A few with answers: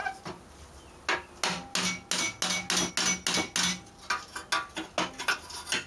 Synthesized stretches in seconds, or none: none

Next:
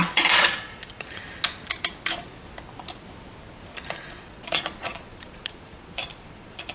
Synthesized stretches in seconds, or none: 0.0-1.2 (vocoder, Vocos); 3.9-6.7

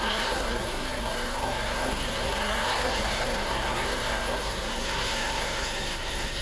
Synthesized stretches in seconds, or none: 0.0-6.4 (codec, SNAC)

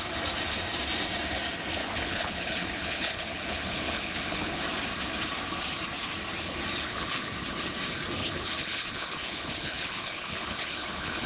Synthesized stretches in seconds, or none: 1.8-4.6 (codec, HILCodec); 6.9-7.4; 8.2-11.3

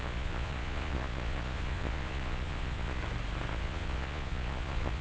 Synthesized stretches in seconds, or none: 0.0-3.0 (vocoder, Vocos); 3.5-5.0